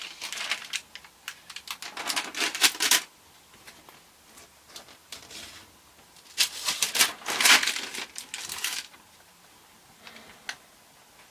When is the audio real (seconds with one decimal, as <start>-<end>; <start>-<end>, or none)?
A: 0.0-5.0; 5.5-11.3